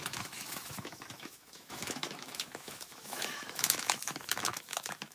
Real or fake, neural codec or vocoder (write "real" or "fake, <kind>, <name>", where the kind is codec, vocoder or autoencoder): fake, autoencoder, DAC-VAE